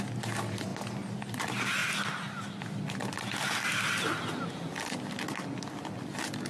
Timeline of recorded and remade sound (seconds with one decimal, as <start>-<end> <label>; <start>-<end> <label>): 0.0-6.5 recorded